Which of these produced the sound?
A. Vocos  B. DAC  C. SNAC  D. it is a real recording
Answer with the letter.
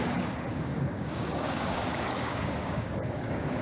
B